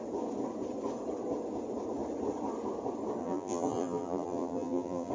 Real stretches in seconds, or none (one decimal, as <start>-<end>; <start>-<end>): 0.0-3.2